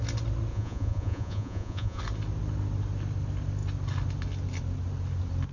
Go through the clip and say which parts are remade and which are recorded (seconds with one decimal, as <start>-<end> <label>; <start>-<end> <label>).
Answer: 0.0-0.5 recorded; 0.5-2.0 remade; 2.0-5.5 recorded